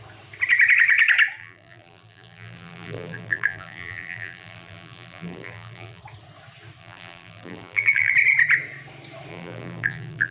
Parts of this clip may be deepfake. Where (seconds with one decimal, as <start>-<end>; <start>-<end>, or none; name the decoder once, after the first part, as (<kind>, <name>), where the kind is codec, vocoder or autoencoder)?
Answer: 1.4-6.0 (vocoder, BigVGAN v2); 6.8-8.1; 9.3-10.3